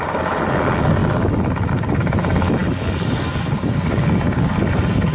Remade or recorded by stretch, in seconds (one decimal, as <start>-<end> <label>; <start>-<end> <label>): 0.0-5.1 recorded